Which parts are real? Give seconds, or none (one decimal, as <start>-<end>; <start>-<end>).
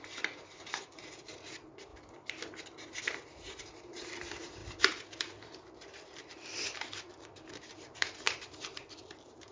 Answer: 1.9-3.0; 4.6-5.2